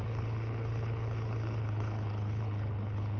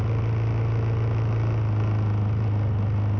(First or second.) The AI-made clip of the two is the first